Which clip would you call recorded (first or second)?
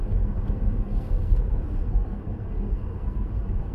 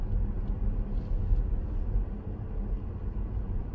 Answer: second